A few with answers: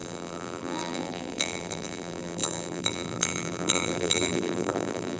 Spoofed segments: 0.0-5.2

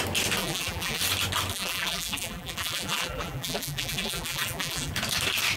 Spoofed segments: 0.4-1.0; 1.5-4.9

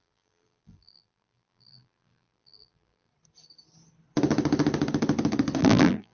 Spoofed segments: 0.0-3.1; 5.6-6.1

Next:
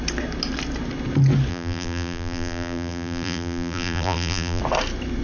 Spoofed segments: 1.5-4.6

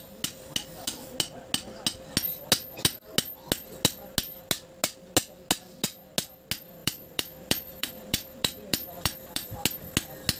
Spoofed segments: 6.8-9.5

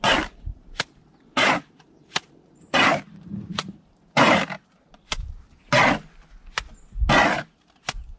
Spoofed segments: 0.5-5.3